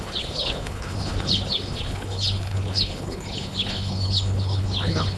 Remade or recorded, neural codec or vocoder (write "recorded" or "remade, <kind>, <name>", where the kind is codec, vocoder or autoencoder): remade, codec, HILCodec